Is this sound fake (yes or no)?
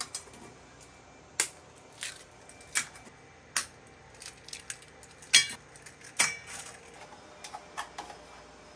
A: no